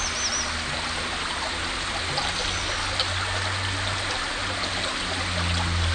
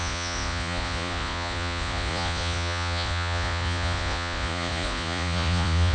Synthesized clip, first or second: second